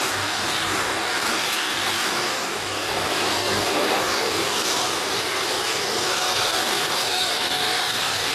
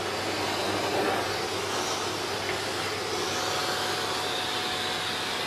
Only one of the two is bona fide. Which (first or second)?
second